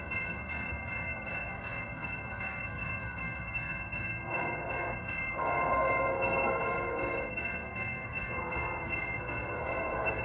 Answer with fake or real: fake